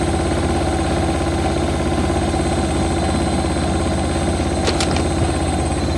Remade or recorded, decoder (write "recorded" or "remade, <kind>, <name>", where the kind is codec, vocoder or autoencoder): recorded